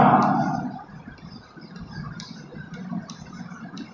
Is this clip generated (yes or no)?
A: no